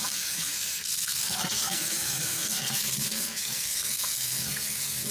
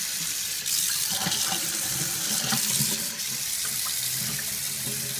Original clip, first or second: second